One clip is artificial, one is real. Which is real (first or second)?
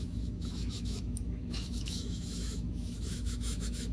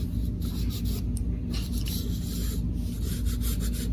second